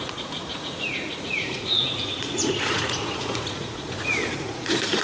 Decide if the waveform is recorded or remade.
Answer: remade